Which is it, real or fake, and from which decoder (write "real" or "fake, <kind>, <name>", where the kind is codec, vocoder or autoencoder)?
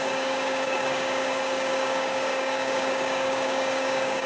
fake, codec, DAC